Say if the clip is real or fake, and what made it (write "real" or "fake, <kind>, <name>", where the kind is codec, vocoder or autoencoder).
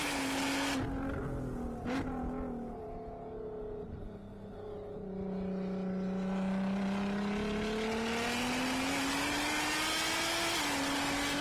real